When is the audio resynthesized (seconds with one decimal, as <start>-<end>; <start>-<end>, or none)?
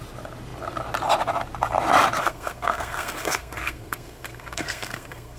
2.2-5.4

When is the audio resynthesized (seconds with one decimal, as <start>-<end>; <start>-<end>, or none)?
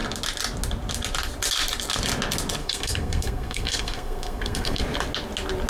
2.6-4.8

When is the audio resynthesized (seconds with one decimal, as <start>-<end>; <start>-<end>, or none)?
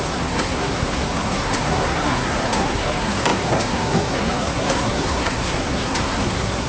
0.0-6.7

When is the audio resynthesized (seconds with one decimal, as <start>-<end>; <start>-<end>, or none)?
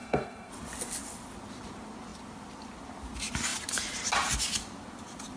0.0-0.5